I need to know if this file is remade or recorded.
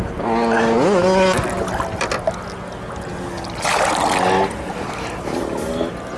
recorded